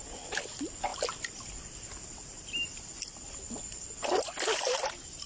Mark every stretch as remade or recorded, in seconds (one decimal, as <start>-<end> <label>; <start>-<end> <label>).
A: 0.0-5.3 recorded